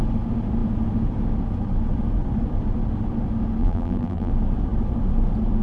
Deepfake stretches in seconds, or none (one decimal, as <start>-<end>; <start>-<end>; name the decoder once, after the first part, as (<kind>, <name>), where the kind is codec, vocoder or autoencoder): 3.6-4.3 (vocoder, BigVGAN v2)